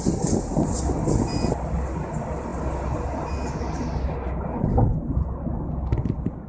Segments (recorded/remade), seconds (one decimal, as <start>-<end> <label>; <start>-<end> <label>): 0.0-6.5 recorded